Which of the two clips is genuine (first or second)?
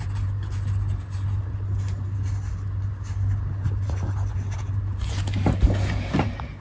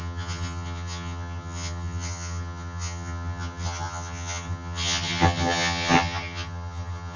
first